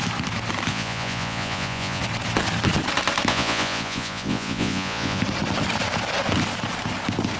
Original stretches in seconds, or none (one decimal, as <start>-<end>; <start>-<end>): 0.0-0.7; 2.0-3.3; 5.2-7.4